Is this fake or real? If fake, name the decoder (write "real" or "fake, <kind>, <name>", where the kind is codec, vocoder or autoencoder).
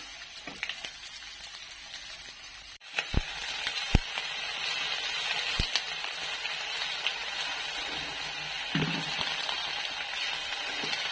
real